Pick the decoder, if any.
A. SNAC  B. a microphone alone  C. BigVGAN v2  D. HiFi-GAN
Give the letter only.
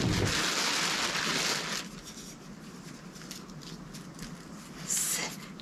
B